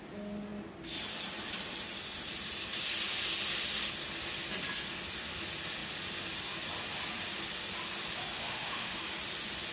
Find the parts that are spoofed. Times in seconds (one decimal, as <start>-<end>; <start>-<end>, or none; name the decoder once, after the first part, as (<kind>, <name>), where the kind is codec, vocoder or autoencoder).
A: 8.4-9.0 (autoencoder, DAC-VAE)